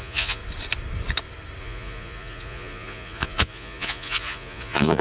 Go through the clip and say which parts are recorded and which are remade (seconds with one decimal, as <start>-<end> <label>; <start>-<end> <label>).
0.0-0.4 remade; 0.4-1.6 recorded; 1.6-5.0 remade

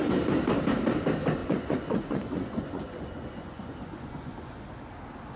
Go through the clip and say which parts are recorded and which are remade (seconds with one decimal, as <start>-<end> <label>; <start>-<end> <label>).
0.0-1.4 recorded; 1.4-4.6 remade; 4.6-5.4 recorded

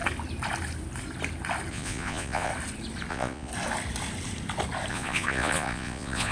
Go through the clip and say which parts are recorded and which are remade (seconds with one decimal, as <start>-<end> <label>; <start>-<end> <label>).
0.0-1.7 recorded; 1.7-2.5 remade; 2.5-3.1 recorded; 3.1-3.5 remade; 3.5-4.9 recorded; 4.9-6.3 remade

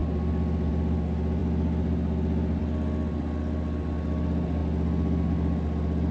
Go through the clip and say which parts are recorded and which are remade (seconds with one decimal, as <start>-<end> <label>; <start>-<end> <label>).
0.0-6.1 recorded